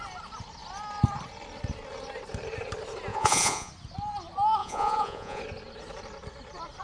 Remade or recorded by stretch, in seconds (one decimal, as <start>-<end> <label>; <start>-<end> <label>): 0.0-3.1 recorded; 3.1-3.7 remade; 3.7-4.6 recorded; 4.6-5.4 remade; 5.4-6.8 recorded